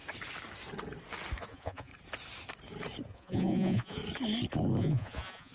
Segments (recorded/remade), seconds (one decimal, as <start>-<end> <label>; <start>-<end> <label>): 0.0-1.4 recorded; 1.4-1.9 remade; 1.9-3.1 recorded; 3.1-4.0 remade; 4.0-4.8 recorded; 4.8-5.5 remade